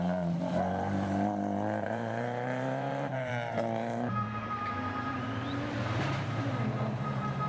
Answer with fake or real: fake